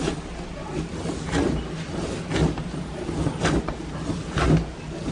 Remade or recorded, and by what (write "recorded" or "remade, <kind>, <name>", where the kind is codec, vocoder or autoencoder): recorded